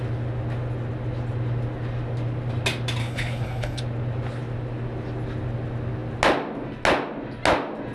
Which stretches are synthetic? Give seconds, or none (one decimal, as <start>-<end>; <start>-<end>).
3.0-3.8